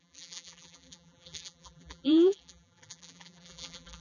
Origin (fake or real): fake